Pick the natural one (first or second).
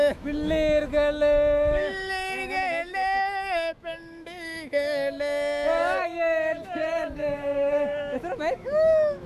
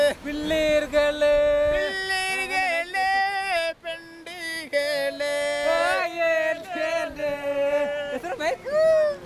second